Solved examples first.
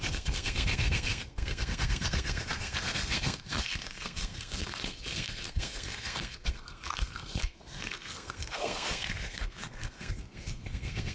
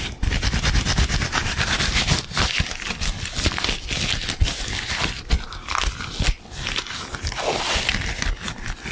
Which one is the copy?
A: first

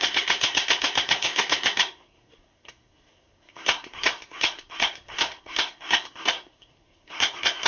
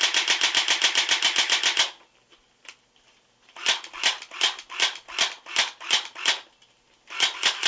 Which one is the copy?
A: first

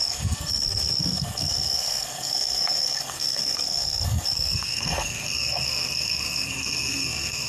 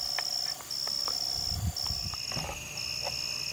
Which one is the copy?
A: first